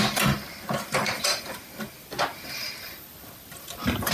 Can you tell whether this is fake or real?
fake